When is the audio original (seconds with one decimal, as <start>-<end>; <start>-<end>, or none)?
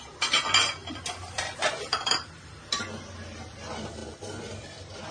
0.0-0.8; 2.8-5.1